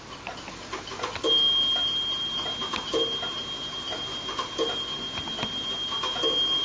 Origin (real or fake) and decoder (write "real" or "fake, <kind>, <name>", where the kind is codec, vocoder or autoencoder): real